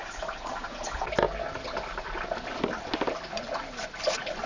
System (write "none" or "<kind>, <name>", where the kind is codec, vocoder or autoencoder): none